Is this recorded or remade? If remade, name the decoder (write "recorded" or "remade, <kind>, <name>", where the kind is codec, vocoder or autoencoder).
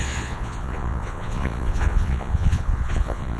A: remade, vocoder, Vocos